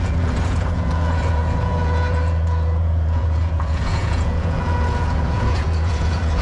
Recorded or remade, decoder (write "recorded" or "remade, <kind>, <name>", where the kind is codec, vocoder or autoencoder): remade, vocoder, Vocos